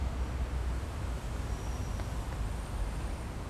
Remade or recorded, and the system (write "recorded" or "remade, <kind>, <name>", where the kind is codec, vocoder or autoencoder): recorded